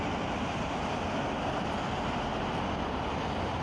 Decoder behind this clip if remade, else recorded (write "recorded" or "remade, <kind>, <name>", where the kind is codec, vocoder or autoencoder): recorded